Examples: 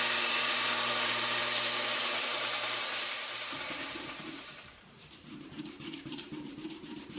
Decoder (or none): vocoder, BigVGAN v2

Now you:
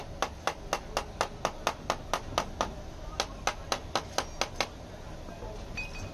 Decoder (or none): none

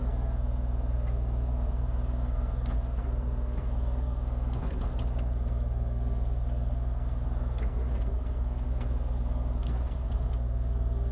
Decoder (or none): codec, SNAC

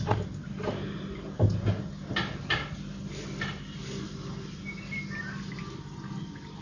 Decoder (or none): none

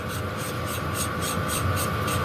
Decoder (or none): none